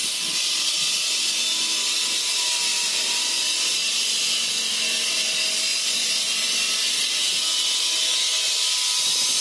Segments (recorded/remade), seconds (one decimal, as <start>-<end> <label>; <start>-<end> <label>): 0.0-9.4 recorded

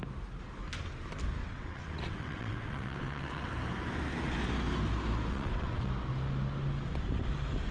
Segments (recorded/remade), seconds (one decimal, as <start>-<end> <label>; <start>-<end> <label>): 0.0-1.4 recorded; 1.4-3.5 remade; 3.5-5.3 recorded; 5.3-5.9 remade; 5.9-7.7 recorded

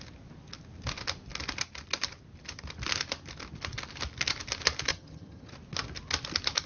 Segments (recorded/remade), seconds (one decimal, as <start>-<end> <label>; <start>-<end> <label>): 0.0-4.9 recorded; 4.9-5.5 remade; 5.5-6.7 recorded

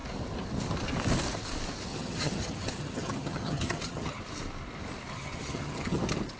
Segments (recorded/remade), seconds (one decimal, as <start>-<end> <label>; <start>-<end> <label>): 0.0-1.9 recorded; 1.9-4.2 remade; 4.2-5.1 recorded; 5.1-6.0 remade; 6.0-6.4 recorded

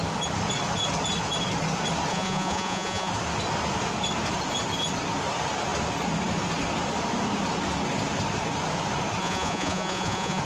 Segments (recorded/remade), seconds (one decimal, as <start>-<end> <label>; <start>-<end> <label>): 0.0-2.1 recorded; 2.1-3.1 remade; 3.1-9.2 recorded; 9.2-10.4 remade

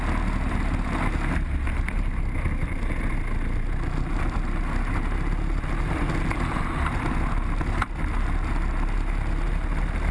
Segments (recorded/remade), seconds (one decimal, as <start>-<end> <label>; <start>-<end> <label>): 0.0-10.1 recorded

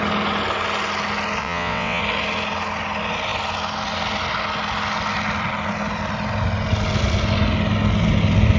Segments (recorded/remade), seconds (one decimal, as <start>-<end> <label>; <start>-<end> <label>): 0.0-1.4 recorded; 1.4-2.0 remade; 2.0-8.6 recorded

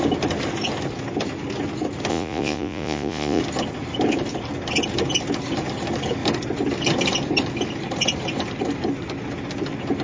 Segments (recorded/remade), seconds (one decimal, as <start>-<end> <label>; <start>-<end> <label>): 0.0-2.1 recorded; 2.1-3.4 remade; 3.4-10.0 recorded